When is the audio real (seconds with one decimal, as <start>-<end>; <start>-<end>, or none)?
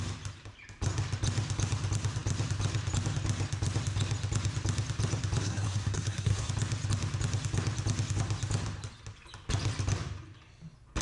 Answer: 0.0-5.4; 6.5-11.0